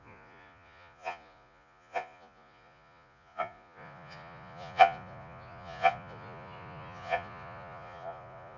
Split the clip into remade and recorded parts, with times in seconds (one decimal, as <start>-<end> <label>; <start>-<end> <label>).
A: 0.0-8.6 remade